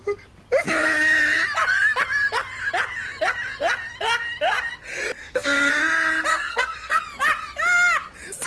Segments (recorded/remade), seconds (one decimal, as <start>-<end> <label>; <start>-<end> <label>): 0.0-5.2 recorded; 5.2-5.7 remade; 5.7-6.3 recorded; 6.3-7.0 remade; 7.0-8.5 recorded